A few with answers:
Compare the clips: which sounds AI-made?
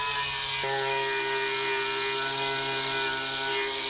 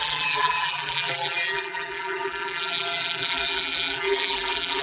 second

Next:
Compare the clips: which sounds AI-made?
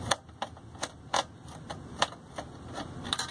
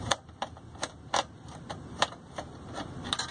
second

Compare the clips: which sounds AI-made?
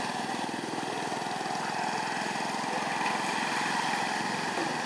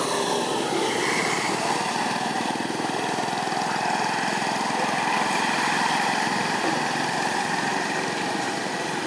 second